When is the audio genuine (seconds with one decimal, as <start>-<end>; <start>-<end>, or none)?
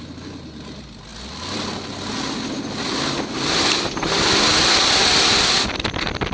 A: 0.0-6.3